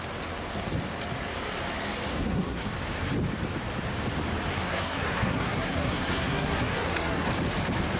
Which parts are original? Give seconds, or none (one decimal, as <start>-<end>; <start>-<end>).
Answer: 0.0-2.1; 2.7-4.5; 7.3-8.0